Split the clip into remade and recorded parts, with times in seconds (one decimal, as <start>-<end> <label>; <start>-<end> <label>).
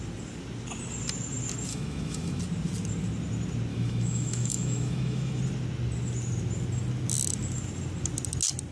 0.0-1.7 recorded; 1.7-2.4 remade; 2.4-3.7 recorded; 3.7-5.4 remade; 5.4-8.7 recorded